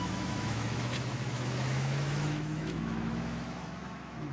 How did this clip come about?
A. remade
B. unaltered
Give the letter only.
A